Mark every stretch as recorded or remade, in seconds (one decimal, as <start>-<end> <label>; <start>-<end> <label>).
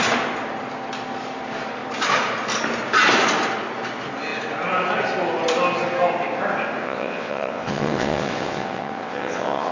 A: 0.0-6.8 recorded; 6.8-9.7 remade